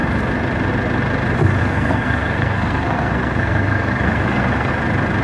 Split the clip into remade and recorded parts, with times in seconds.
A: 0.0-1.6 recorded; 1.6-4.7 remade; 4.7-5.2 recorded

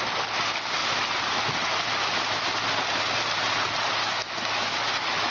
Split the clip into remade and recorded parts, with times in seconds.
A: 0.0-4.0 recorded; 4.0-5.3 remade

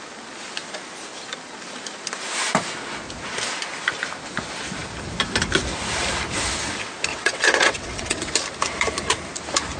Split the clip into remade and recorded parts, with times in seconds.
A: 0.0-7.1 recorded; 7.1-8.3 remade; 8.3-9.8 recorded

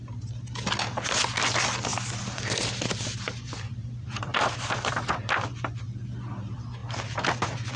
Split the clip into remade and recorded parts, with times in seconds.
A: 0.0-1.9 recorded; 1.9-4.9 remade; 4.9-6.8 recorded; 6.8-7.8 remade

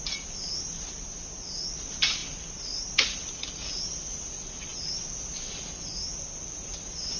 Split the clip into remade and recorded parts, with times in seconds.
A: 0.0-7.2 recorded

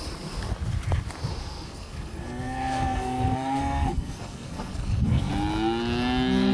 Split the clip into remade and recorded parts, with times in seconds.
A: 0.0-1.4 recorded; 1.4-5.3 remade; 5.3-6.5 recorded

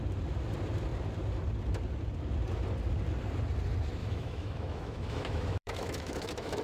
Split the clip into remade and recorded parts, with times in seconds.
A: 0.0-4.0 recorded; 4.0-6.6 remade